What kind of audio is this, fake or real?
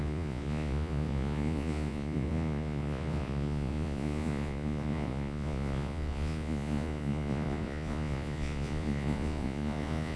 fake